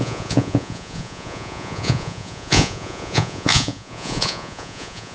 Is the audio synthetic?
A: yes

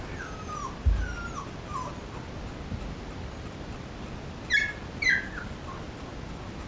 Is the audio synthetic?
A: no